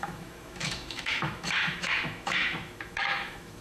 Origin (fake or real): fake